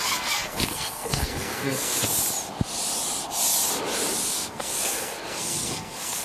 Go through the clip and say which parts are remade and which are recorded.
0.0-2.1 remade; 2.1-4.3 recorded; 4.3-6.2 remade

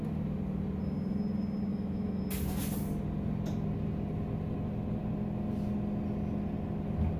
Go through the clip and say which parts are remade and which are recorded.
0.0-1.7 recorded; 1.7-2.2 remade; 2.2-7.2 recorded

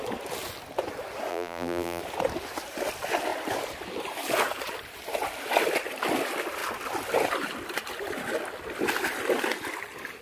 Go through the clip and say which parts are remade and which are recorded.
0.0-1.3 recorded; 1.3-2.0 remade; 2.0-10.2 recorded

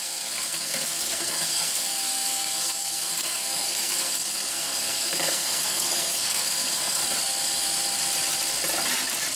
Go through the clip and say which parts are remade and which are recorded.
0.0-7.0 remade; 7.0-9.4 recorded